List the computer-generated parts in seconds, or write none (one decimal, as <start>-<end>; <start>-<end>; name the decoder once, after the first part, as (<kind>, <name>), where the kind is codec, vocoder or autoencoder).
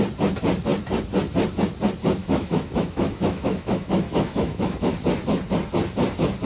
2.2-4.9 (autoencoder, DAC-VAE)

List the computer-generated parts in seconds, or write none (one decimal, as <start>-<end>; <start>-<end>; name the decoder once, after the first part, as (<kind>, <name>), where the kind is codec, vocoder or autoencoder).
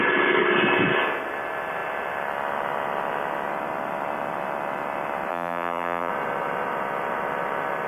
5.3-6.1 (vocoder, BigVGAN v2)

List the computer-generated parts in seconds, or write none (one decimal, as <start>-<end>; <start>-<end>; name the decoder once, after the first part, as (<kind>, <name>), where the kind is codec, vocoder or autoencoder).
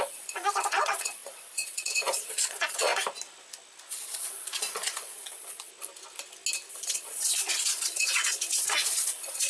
0.0-2.9 (vocoder, Vocos); 3.9-5.7; 6.7-9.5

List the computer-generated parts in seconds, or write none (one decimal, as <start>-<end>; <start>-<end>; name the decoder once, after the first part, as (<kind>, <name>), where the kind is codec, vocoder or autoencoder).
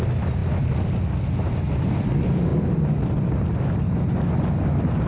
none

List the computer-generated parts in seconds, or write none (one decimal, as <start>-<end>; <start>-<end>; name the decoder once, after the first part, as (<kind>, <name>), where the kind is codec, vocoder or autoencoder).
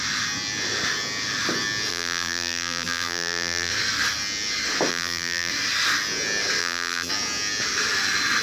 1.9-3.7 (vocoder, BigVGAN v2); 4.9-5.5; 6.6-7.1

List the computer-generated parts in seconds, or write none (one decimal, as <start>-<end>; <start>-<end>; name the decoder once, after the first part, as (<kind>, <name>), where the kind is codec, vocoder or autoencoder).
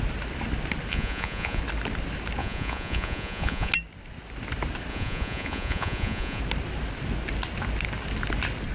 0.9-1.6 (vocoder, Vocos); 2.4-3.7; 4.9-6.4